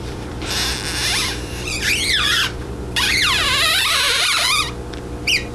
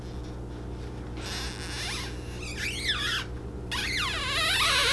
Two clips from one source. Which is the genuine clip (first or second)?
second